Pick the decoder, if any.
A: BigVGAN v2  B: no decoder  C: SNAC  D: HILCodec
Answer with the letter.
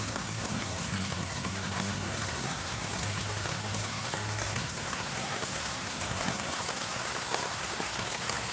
C